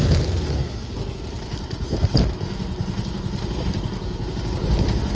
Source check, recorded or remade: recorded